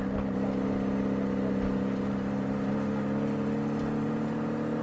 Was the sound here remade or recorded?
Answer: recorded